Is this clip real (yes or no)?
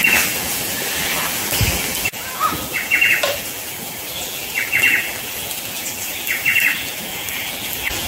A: no